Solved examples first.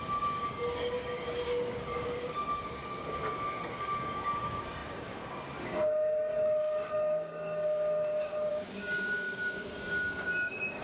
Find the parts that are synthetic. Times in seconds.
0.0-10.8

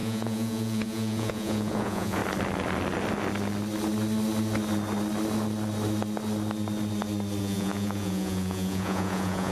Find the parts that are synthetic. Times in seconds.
0.0-2.2; 7.4-9.5

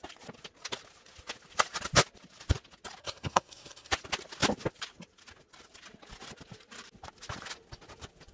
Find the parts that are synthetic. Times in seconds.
3.0-3.9

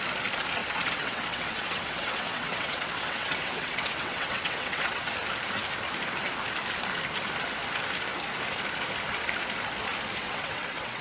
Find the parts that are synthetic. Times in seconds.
0.6-5.1; 10.2-11.0

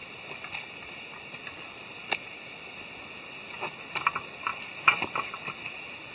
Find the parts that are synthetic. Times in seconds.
0.0-1.3; 2.0-3.1; 4.5-5.3

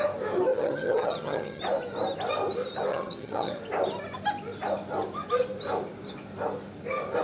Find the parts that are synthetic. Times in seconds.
0.5-1.6; 2.9-3.6